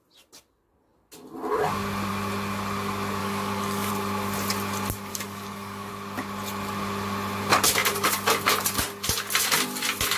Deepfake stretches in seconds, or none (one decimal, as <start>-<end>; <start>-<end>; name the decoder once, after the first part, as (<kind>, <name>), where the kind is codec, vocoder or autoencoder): 3.2-3.9 (codec, DAC); 5.1-5.9